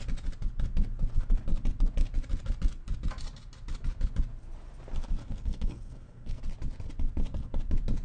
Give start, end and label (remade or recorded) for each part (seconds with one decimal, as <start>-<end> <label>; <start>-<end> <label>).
0.0-5.2 recorded; 5.2-6.4 remade; 6.4-8.0 recorded